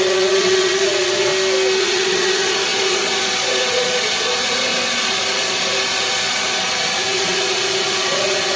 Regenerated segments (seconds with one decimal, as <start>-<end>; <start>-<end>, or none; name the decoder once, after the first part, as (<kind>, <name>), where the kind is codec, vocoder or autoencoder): 0.0-1.3 (vocoder, Vocos); 1.8-8.6